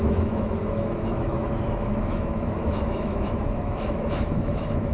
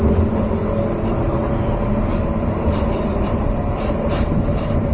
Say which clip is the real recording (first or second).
second